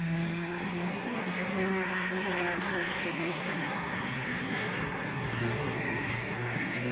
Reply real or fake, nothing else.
fake